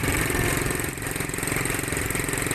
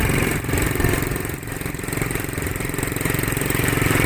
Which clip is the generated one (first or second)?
second